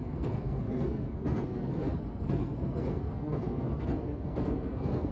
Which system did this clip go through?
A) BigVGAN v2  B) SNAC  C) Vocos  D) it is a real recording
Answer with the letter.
B